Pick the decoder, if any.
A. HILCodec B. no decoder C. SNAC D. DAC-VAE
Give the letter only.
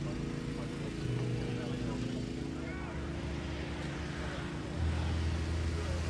B